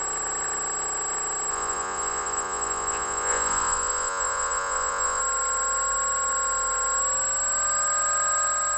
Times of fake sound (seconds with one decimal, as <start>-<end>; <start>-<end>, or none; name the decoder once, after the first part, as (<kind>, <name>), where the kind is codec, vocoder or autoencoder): 1.5-5.2 (vocoder, Vocos)